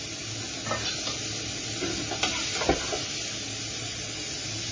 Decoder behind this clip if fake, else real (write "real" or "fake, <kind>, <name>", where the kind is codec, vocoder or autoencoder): real